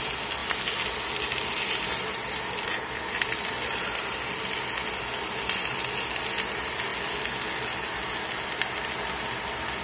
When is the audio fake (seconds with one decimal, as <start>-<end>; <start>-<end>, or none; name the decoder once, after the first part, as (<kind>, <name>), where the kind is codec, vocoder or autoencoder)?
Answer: none